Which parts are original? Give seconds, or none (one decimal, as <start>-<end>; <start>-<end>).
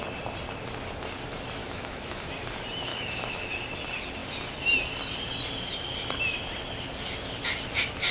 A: 0.0-1.6; 2.3-2.9; 3.5-8.1